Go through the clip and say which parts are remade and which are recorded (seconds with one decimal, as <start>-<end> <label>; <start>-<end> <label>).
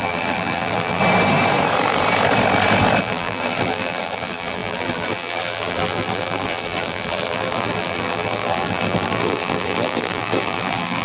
0.0-1.0 remade; 1.0-3.0 recorded; 3.0-11.0 remade